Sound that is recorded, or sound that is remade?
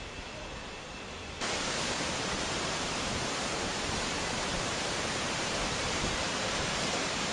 remade